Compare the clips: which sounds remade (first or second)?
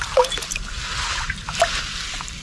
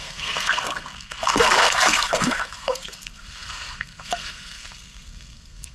second